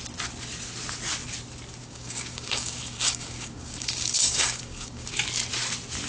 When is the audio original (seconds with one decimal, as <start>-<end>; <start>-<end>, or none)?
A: 0.0-1.8; 5.1-6.1